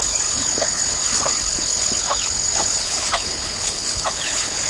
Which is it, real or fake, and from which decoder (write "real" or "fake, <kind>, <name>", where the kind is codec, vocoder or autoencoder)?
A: fake, codec, HILCodec